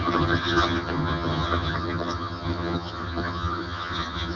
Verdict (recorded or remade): remade